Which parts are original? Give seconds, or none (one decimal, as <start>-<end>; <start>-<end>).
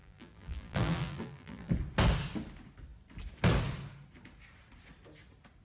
1.7-5.6